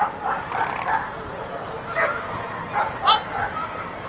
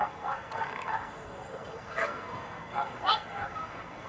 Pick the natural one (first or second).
first